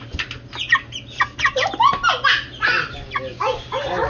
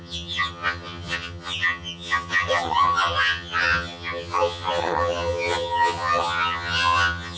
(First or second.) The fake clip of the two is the second